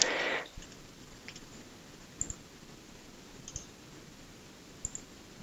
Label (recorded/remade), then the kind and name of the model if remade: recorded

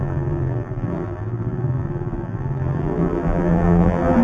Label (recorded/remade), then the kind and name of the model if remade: remade, vocoder, BigVGAN v2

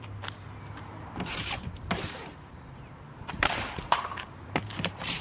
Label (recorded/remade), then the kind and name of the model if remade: remade, vocoder, BigVGAN v2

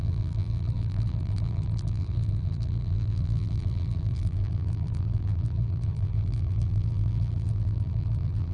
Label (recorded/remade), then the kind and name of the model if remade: remade, vocoder, BigVGAN v2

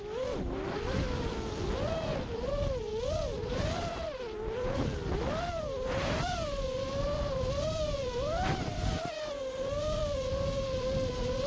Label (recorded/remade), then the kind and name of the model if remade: remade, vocoder, BigVGAN v2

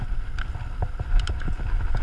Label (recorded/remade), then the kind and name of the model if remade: recorded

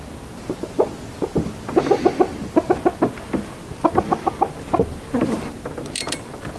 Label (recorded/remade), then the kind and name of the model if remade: recorded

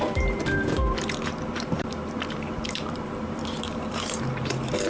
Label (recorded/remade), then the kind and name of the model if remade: remade, vocoder, BigVGAN v2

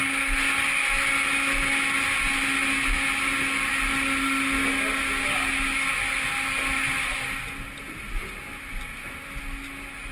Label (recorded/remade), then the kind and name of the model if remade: recorded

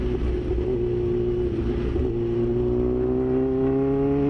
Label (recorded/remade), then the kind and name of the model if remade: recorded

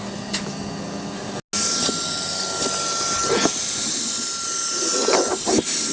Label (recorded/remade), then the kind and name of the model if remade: recorded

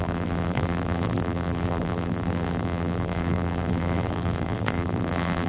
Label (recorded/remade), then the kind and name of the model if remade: remade, vocoder, BigVGAN v2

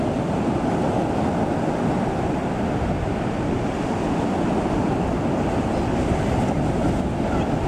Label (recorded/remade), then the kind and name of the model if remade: recorded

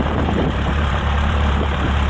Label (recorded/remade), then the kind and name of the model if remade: remade, vocoder, BigVGAN v2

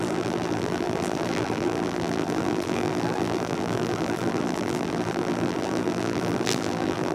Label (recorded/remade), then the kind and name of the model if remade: remade, vocoder, BigVGAN v2